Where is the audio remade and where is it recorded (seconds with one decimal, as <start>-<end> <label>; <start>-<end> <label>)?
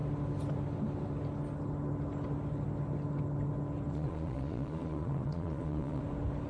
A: 0.0-3.9 recorded; 3.9-6.0 remade; 6.0-6.5 recorded